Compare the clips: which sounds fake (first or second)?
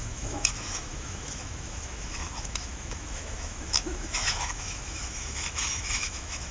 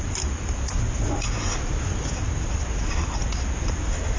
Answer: first